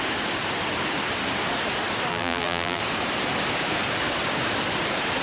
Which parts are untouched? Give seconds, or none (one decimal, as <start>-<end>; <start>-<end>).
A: 0.0-2.1; 2.8-5.2